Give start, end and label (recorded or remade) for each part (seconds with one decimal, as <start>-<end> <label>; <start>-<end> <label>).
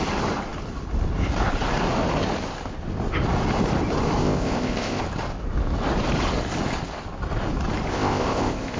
0.0-4.2 recorded; 4.2-5.0 remade; 5.0-7.9 recorded; 7.9-8.8 remade